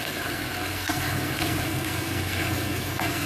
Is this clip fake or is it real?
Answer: fake